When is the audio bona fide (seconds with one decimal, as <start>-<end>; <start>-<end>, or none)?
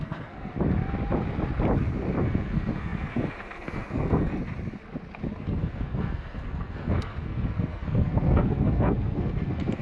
0.5-2.2; 4.4-5.4